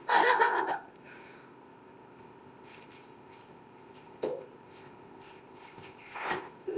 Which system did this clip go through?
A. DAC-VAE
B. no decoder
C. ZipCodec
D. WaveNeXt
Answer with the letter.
C